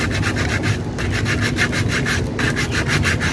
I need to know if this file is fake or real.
real